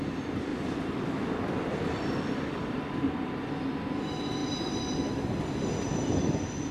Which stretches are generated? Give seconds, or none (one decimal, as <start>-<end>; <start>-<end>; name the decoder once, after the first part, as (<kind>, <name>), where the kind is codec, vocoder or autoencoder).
0.0-0.5 (vocoder, BigVGAN v2); 1.7-6.7